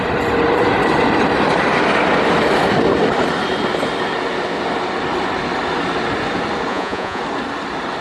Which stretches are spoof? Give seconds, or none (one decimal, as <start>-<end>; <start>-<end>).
6.7-7.2